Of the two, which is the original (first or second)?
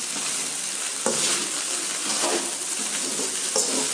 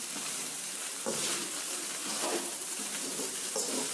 first